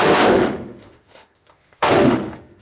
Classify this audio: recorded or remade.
remade